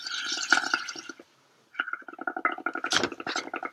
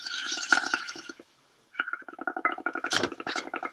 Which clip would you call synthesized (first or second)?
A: second